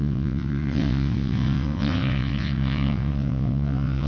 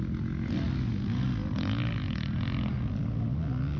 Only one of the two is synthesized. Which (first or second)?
first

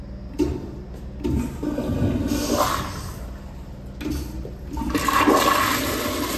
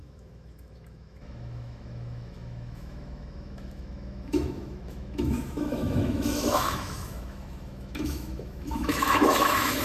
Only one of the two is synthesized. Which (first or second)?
second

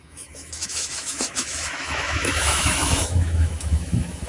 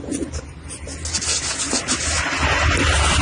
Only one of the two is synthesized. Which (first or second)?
first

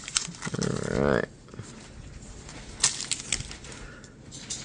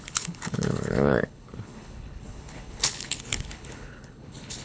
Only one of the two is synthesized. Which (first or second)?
second